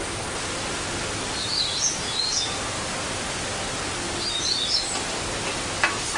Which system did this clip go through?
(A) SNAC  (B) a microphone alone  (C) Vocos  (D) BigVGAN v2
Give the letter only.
B